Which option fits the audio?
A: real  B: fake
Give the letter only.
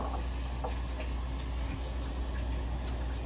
A